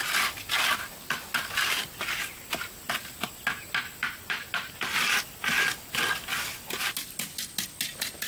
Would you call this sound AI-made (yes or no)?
no